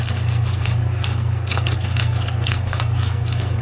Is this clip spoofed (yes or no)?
yes